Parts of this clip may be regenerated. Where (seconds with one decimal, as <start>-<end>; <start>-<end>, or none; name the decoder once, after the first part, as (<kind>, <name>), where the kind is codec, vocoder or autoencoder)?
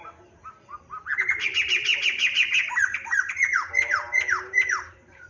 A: none